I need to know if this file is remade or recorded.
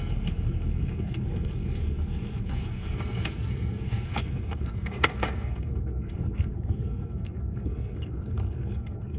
remade